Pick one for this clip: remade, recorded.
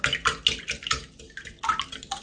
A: recorded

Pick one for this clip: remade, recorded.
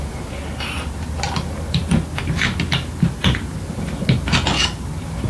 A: recorded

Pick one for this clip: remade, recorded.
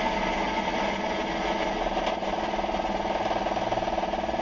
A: recorded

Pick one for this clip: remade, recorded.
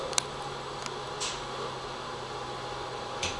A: recorded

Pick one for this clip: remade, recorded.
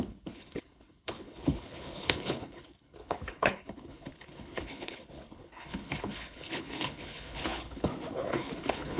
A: remade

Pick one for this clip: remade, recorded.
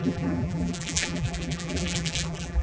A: remade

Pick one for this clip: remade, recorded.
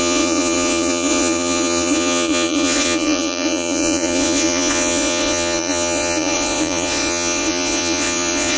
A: remade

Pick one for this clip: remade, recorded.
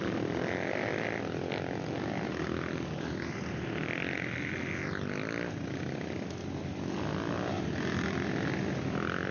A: recorded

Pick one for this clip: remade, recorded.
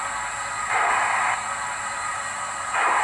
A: recorded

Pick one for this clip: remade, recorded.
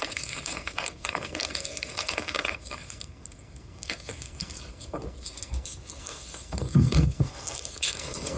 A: remade